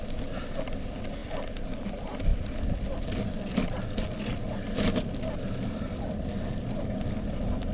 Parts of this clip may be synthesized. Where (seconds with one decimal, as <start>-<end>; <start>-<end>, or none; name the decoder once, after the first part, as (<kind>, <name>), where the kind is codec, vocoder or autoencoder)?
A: none